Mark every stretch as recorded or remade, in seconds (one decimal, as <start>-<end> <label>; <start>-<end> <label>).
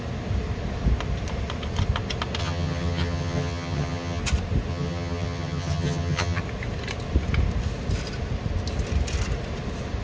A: 0.0-2.4 recorded; 2.4-4.2 remade; 4.2-4.7 recorded; 4.7-6.4 remade; 6.4-10.0 recorded